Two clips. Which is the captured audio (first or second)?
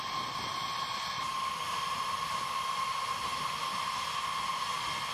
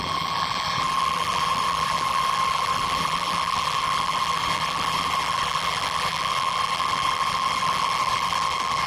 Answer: first